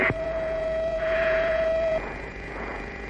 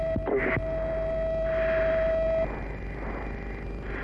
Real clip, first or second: second